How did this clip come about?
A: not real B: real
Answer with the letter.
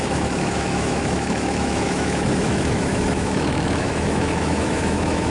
A